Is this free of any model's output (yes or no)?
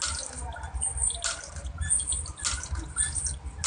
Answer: yes